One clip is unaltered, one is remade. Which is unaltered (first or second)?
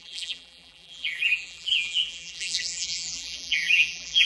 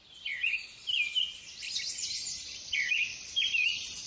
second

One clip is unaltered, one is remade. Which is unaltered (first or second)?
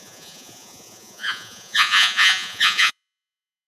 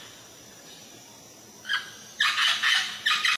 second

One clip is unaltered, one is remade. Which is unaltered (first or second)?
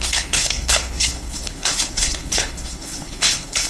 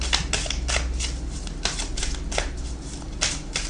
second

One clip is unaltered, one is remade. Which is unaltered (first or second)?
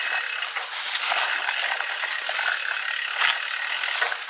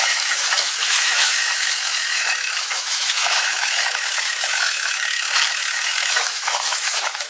first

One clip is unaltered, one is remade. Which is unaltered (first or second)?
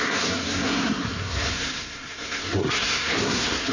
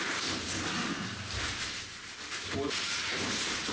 second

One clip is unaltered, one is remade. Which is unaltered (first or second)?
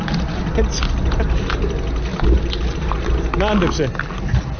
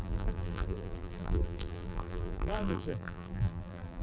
first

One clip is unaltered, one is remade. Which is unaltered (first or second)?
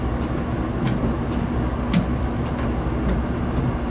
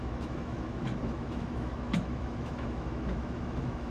first